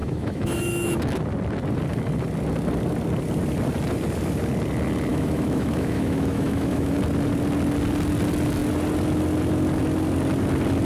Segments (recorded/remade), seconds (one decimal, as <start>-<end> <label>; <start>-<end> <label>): 0.0-1.2 remade; 1.2-5.1 recorded; 5.1-7.0 remade; 7.0-10.8 recorded